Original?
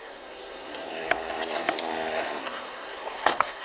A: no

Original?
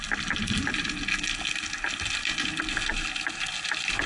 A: yes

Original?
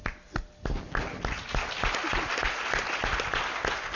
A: yes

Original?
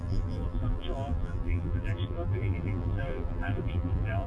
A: no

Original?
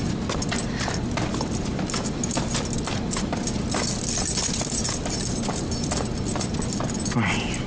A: yes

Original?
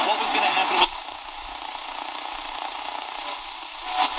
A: yes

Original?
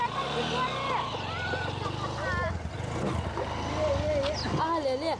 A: yes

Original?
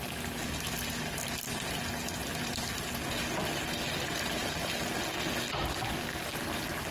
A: yes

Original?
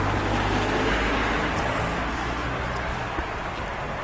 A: yes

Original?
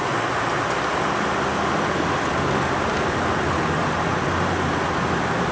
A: yes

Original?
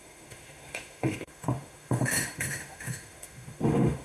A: no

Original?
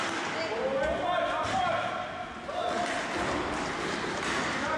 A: yes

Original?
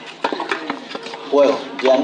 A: yes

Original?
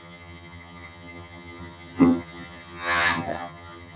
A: no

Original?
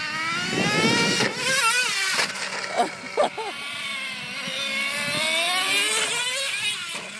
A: yes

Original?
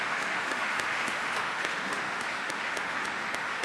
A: no